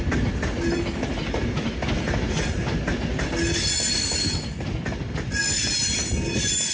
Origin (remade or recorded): recorded